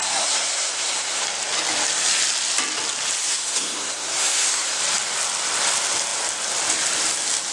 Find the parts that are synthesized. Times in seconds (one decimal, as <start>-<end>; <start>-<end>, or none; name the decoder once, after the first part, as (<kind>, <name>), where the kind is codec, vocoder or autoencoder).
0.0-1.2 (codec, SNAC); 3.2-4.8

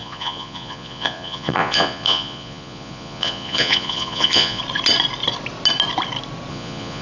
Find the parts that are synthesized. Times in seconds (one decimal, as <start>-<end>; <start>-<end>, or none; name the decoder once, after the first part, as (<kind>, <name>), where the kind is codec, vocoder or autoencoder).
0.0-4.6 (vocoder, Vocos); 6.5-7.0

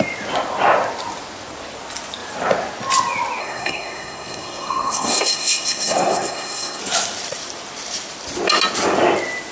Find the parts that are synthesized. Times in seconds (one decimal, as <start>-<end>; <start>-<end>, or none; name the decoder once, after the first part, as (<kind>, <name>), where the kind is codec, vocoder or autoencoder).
3.4-6.8 (codec, SNAC)

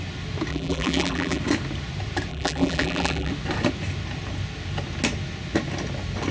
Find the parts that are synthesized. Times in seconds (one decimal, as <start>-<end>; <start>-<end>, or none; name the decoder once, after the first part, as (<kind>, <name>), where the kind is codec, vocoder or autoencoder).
0.5-1.4 (vocoder, BigVGAN v2); 2.3-3.3

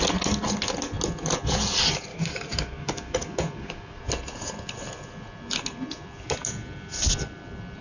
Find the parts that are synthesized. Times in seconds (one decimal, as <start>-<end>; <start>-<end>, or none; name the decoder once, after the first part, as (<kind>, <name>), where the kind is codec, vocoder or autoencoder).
2.1-4.0 (codec, DAC)

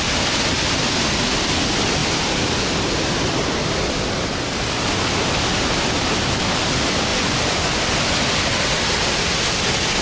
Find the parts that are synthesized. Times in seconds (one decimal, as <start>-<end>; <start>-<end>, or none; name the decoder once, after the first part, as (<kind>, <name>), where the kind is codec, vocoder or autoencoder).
7.1-7.9 (vocoder, Vocos)

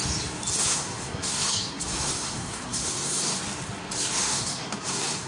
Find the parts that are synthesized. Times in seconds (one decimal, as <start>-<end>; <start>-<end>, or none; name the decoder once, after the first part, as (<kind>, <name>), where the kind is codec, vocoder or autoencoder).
0.6-3.4 (codec, SNAC); 4.2-5.3